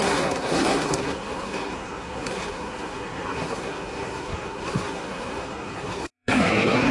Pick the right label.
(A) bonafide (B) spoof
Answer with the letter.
B